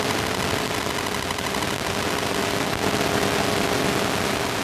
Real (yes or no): yes